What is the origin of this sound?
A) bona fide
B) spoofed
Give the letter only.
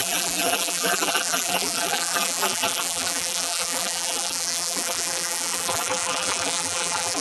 B